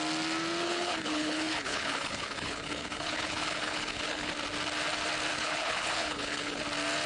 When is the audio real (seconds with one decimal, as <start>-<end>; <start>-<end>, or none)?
0.0-0.6; 4.3-5.3; 6.6-7.1